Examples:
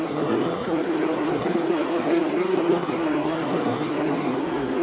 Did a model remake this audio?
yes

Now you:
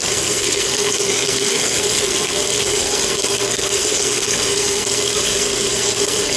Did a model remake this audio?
yes